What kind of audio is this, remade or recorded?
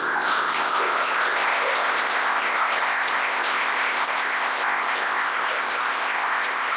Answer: remade